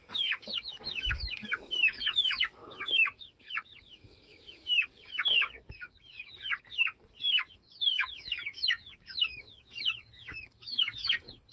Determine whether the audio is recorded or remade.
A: remade